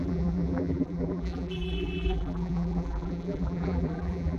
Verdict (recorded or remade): remade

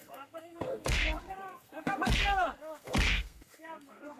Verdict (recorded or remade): remade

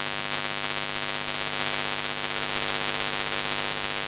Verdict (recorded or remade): recorded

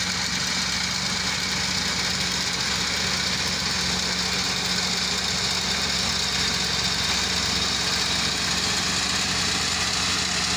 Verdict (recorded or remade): recorded